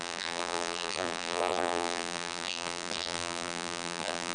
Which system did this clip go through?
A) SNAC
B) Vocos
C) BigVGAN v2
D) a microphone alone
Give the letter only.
C